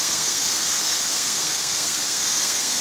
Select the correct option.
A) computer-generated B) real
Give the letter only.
A